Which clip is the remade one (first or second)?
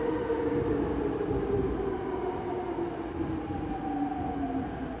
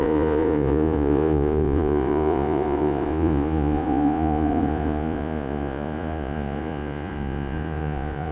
second